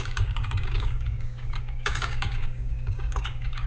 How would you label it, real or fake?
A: fake